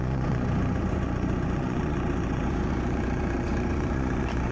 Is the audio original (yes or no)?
no